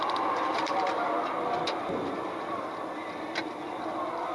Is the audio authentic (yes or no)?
no